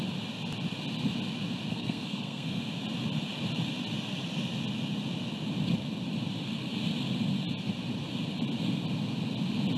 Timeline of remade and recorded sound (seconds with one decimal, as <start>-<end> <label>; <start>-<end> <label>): 0.0-1.7 recorded; 1.7-2.7 remade; 2.7-9.8 recorded